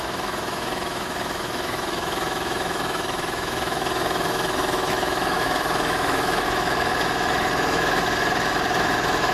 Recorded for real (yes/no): no